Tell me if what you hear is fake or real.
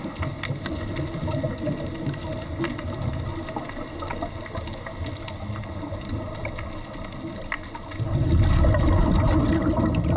real